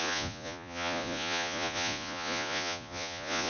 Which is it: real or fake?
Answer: fake